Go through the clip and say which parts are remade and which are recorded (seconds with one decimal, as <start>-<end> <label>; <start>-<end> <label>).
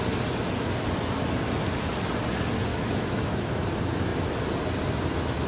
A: 0.0-2.7 recorded; 2.7-3.5 remade; 3.5-5.5 recorded